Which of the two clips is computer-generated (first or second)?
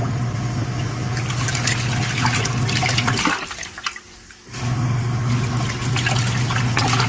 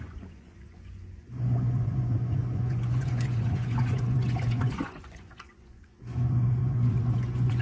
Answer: second